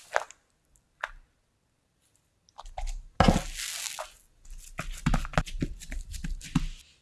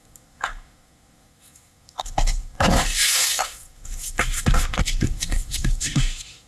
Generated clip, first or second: second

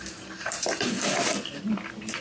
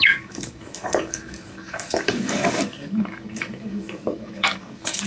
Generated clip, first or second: second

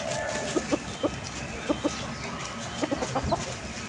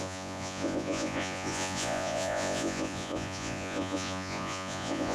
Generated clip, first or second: second